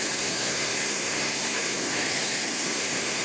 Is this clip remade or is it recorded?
remade